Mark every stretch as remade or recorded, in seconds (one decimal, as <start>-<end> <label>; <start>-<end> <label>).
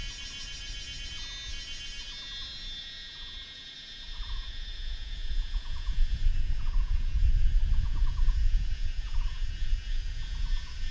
0.0-2.8 recorded; 2.8-10.9 remade